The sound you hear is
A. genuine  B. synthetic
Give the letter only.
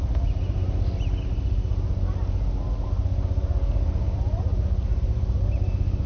A